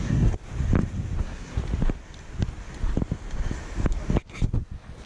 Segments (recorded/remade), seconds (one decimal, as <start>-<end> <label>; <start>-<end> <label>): 0.0-0.4 remade; 0.4-1.2 recorded; 1.2-1.6 remade; 1.6-5.1 recorded